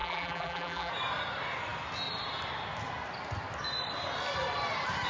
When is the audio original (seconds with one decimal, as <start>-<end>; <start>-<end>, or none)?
0.9-5.1